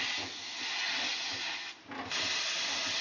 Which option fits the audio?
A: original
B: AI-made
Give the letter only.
A